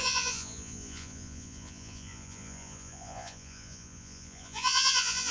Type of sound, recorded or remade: remade